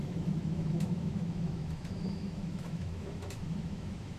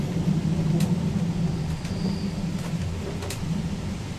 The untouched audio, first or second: second